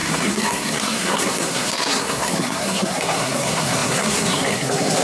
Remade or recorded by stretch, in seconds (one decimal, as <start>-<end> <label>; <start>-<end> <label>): 0.0-5.0 remade